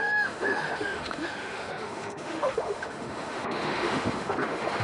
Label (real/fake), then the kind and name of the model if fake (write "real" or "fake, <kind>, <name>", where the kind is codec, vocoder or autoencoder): fake, autoencoder, DAC-VAE